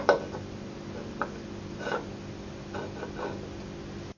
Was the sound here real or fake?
real